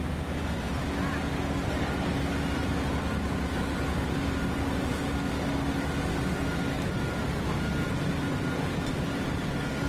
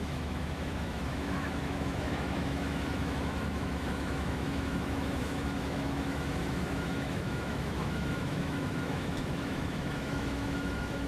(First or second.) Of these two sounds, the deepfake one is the second